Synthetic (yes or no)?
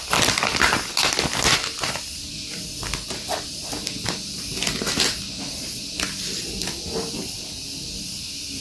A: no